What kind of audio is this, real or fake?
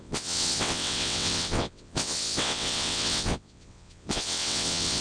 fake